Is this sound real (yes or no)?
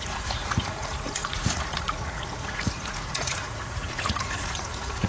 no